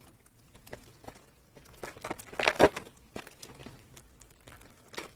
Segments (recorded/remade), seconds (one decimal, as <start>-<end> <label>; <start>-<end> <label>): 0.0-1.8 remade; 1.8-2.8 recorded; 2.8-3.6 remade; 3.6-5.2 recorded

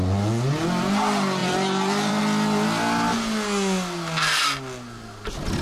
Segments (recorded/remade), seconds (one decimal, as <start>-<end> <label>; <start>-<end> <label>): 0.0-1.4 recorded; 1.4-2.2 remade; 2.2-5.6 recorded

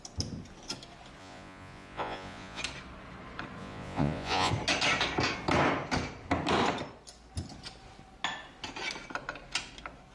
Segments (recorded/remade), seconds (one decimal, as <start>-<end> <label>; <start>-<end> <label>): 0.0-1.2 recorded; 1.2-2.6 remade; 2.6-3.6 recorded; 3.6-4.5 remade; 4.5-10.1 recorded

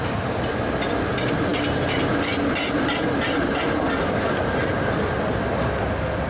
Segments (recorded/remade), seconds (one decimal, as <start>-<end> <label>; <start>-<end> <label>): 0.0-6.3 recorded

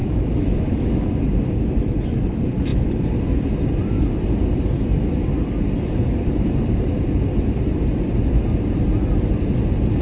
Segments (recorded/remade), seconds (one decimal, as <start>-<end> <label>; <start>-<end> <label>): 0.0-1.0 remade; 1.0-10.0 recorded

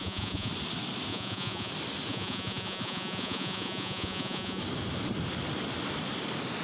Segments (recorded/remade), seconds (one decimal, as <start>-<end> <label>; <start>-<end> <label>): 0.0-0.5 remade; 0.5-1.1 recorded; 1.1-1.7 remade; 1.7-2.1 recorded; 2.1-4.6 remade; 4.6-6.6 recorded